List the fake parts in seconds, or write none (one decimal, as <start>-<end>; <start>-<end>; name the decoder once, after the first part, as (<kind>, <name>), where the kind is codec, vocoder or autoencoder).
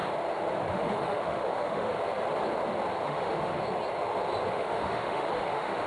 0.7-1.9 (autoencoder, DAC-VAE); 3.0-3.6; 4.5-5.9